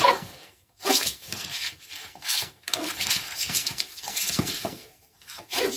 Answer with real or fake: fake